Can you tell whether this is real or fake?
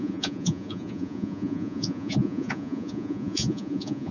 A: fake